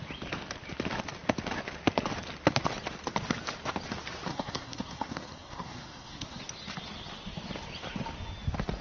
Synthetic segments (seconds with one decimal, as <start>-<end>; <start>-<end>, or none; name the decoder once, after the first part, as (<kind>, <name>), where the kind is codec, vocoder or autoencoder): 4.3-6.4 (codec, SNAC)